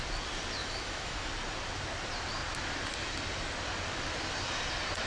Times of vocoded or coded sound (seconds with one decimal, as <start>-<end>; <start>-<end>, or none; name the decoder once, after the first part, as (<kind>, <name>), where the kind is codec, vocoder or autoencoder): 0.6-1.3 (autoencoder, DAC-VAE)